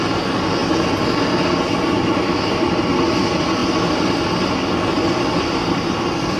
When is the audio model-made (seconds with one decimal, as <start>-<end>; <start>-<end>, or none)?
5.6-6.4